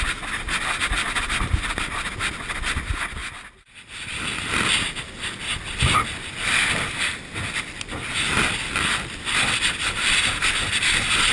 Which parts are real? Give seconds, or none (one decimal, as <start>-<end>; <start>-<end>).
0.0-11.3